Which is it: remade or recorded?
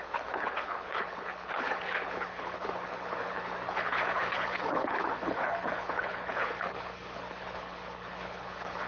remade